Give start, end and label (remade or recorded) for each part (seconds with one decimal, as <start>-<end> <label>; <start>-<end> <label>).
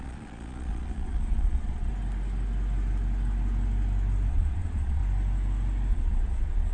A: 0.0-1.9 remade; 1.9-4.3 recorded; 4.3-5.0 remade; 5.0-5.9 recorded; 5.9-6.7 remade